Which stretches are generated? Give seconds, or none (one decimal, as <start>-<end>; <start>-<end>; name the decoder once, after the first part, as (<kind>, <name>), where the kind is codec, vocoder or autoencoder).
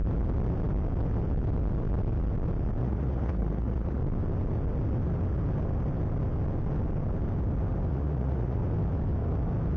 2.8-4.0 (vocoder, Vocos); 7.9-8.6